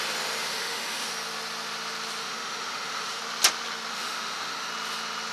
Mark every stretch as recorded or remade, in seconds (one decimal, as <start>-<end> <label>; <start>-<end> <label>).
0.0-0.5 recorded; 0.5-1.1 remade; 1.1-2.2 recorded; 2.2-3.2 remade; 3.2-3.9 recorded; 3.9-4.7 remade; 4.7-5.3 recorded